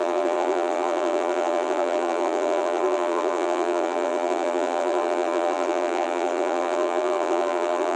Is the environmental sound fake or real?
fake